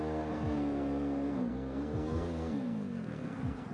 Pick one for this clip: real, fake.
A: fake